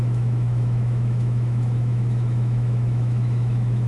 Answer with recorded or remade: remade